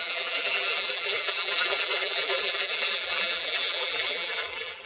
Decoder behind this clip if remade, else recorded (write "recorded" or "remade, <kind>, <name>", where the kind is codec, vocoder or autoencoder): remade, vocoder, BigVGAN v2